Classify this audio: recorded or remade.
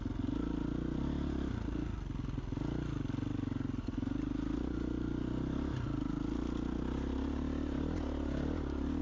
recorded